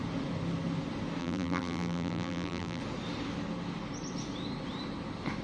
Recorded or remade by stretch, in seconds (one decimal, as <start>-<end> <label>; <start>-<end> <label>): 0.0-1.2 recorded; 1.2-2.8 remade; 2.8-5.4 recorded